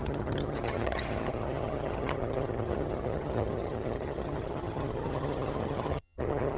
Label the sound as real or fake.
fake